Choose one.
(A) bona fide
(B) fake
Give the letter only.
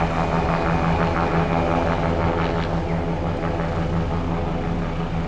A